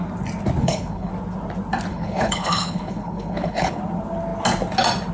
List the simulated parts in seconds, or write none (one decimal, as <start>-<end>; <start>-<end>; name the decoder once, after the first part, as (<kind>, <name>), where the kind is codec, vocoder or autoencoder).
0.6-1.1 (codec, HILCodec); 1.9-3.8

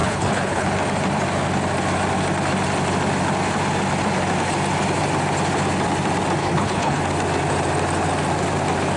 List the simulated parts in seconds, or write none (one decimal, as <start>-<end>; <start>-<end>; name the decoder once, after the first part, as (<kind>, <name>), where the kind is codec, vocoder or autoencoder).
0.0-0.7 (codec, HILCodec); 6.4-7.0